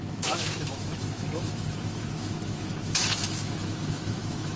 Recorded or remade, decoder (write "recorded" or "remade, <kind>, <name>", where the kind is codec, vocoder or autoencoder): remade, autoencoder, DAC-VAE